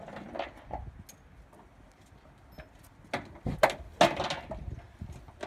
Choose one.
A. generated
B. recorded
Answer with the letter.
B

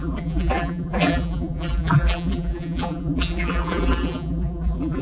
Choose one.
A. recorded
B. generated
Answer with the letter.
B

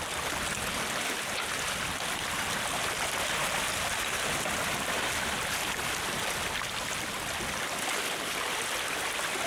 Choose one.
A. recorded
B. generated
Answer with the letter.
A